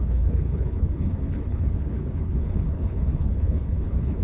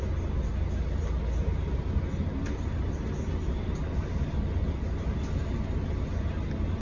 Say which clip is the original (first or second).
second